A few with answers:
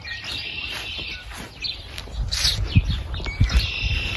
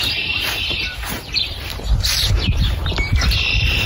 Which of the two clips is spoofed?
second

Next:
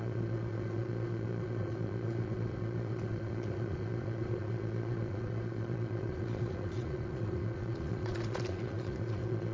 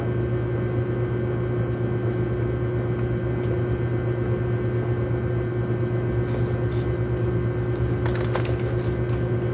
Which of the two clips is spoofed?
first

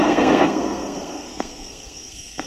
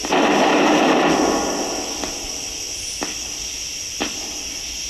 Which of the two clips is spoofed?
first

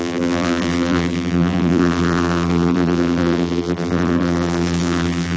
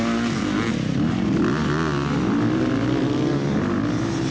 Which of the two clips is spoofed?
first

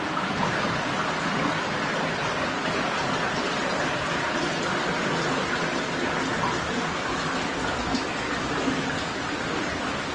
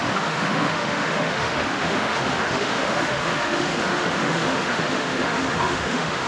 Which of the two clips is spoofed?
second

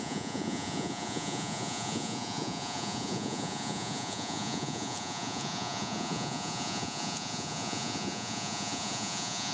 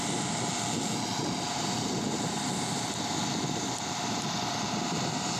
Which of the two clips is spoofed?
first